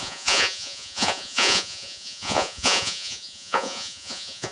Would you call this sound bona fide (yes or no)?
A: no